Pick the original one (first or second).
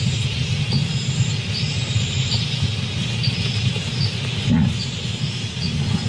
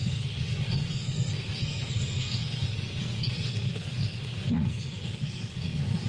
first